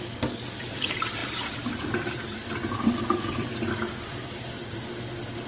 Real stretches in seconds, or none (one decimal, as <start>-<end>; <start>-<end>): none